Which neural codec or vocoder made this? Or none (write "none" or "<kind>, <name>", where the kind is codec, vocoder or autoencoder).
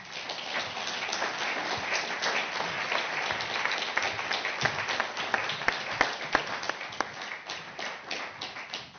none